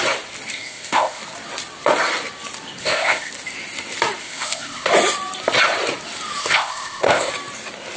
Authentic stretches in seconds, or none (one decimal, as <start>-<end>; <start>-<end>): 0.0-0.5; 1.2-2.8; 3.3-4.2; 4.9-6.4; 7.3-8.0